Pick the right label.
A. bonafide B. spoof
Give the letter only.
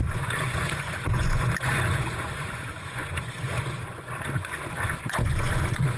B